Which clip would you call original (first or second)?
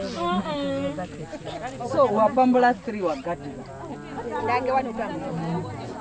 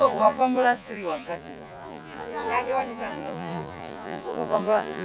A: first